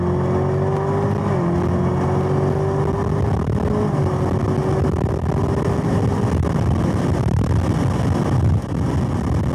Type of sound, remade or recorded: recorded